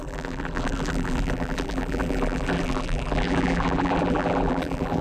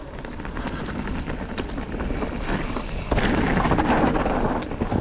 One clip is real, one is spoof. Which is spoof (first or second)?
first